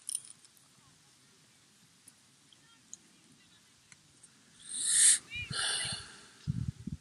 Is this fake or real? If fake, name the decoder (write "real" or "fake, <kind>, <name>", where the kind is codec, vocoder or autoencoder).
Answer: real